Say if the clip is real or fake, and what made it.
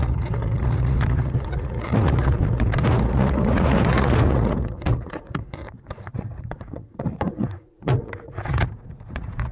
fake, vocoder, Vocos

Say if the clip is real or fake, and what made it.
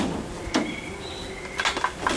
real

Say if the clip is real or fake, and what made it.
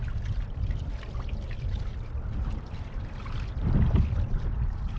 real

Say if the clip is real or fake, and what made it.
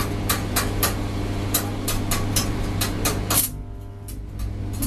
real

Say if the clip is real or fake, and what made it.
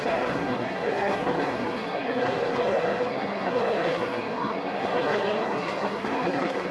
fake, codec, SNAC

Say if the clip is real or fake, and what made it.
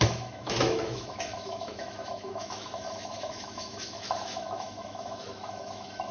fake, autoencoder, DAC-VAE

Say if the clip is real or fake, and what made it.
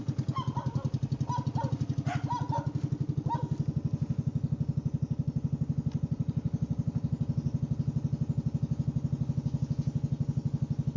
real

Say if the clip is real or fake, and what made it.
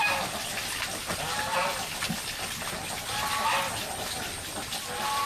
real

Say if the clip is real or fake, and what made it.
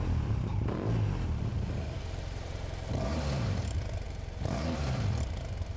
fake, vocoder, BigVGAN v2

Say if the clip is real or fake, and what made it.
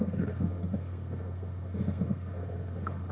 fake, codec, SNAC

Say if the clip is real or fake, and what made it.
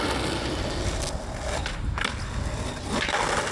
real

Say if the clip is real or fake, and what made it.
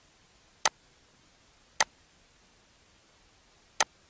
real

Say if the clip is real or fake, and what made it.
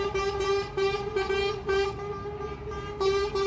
real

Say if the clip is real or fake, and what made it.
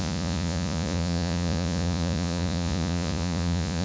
fake, vocoder, Vocos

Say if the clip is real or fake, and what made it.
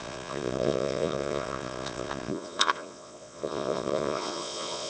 fake, vocoder, Vocos